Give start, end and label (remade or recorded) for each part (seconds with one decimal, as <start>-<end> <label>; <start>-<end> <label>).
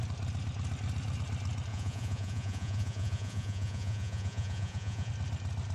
0.0-1.7 recorded; 1.7-5.1 remade; 5.1-5.7 recorded